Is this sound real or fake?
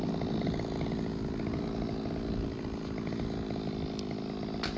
real